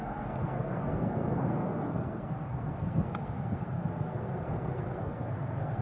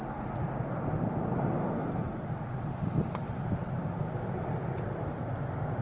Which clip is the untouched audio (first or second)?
second